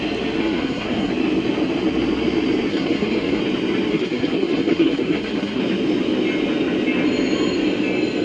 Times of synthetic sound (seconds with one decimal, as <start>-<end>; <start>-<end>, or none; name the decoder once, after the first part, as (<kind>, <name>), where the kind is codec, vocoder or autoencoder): 0.4-1.1 (codec, SNAC); 2.7-3.4; 3.9-5.6